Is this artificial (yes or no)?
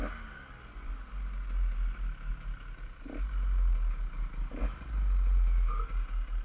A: no